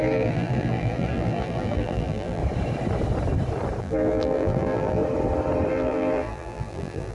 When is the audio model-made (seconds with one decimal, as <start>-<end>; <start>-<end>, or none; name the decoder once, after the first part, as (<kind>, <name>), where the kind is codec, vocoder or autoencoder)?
0.0-2.4 (vocoder, BigVGAN v2); 3.8-5.0; 5.7-7.1